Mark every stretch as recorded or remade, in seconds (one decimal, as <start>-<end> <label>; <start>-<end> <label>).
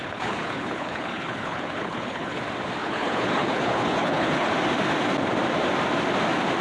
0.0-2.4 remade; 2.4-2.8 recorded; 2.8-4.5 remade; 4.5-6.6 recorded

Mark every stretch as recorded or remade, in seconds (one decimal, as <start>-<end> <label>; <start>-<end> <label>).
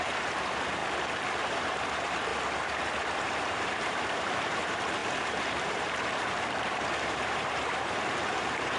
0.0-0.8 remade; 0.8-1.4 recorded; 1.4-2.3 remade; 2.3-3.2 recorded; 3.2-8.8 remade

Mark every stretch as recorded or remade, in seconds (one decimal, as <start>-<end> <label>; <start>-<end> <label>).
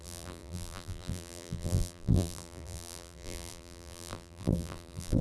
0.0-5.2 remade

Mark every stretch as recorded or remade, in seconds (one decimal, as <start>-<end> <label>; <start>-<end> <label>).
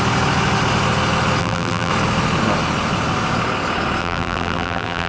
0.0-1.4 recorded; 1.4-1.9 remade; 1.9-4.0 recorded; 4.0-5.1 remade